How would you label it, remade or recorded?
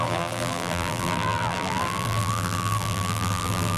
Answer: remade